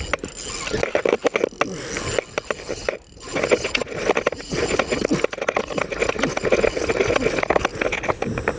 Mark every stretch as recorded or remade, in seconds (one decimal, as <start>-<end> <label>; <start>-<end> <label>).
0.0-8.6 recorded